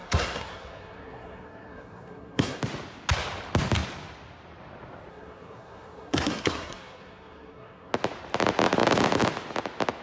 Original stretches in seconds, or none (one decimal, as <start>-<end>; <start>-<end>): 2.6-5.1; 7.9-10.0